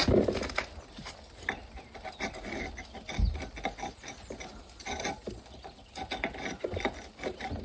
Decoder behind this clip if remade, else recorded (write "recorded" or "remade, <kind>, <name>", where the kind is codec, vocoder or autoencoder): recorded